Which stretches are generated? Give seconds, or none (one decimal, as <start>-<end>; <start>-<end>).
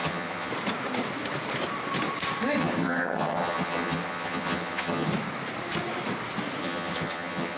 0.0-0.5; 2.6-5.1; 6.6-7.6